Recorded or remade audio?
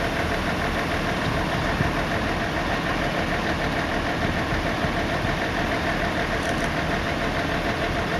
recorded